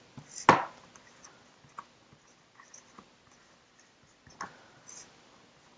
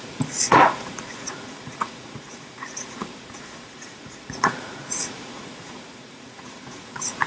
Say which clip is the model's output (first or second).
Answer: second